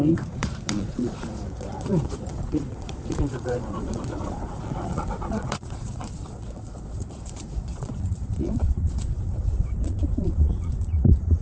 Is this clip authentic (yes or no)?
no